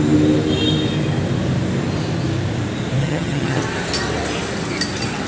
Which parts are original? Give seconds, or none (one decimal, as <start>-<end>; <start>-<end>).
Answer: 0.0-3.0; 3.6-5.3